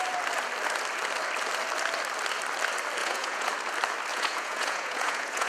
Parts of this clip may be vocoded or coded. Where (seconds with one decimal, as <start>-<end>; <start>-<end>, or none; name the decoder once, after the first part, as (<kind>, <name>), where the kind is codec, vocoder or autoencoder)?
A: 3.0-3.5 (vocoder, Vocos); 4.1-5.5